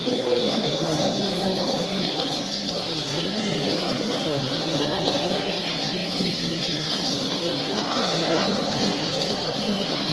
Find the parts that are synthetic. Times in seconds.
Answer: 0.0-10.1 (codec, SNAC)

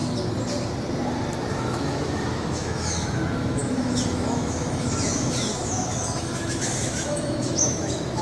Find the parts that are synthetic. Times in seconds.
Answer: 1.5-8.2 (autoencoder, DAC-VAE)